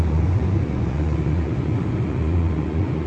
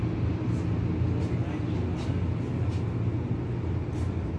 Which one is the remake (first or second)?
first